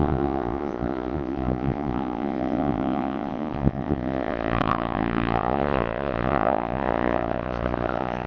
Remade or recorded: remade